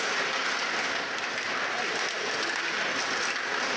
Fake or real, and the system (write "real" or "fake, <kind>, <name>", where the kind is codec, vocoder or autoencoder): real